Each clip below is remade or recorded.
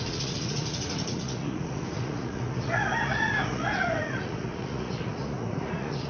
remade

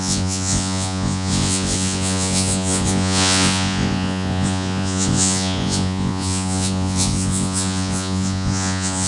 remade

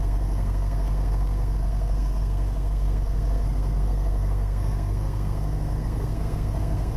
remade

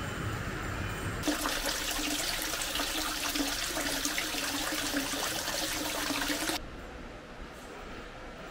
recorded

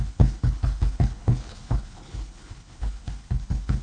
remade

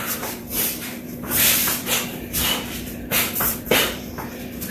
remade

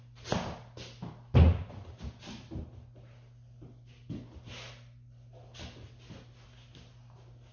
recorded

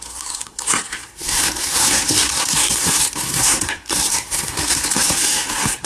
remade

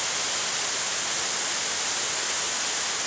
recorded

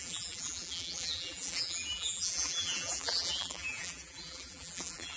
remade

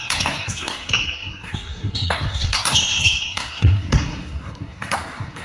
remade